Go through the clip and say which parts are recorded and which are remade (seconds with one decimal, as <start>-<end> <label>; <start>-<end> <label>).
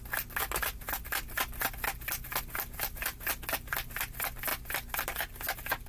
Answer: 0.0-5.9 recorded